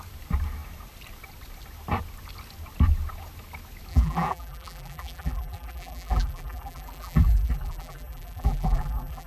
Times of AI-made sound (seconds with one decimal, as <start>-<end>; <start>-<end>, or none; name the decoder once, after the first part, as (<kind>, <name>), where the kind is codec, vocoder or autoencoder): 3.9-9.3 (vocoder, BigVGAN v2)